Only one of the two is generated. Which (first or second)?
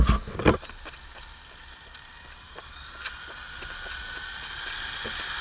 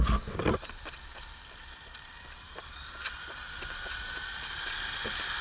second